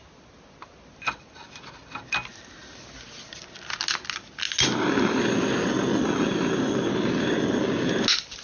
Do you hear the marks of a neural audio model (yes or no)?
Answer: no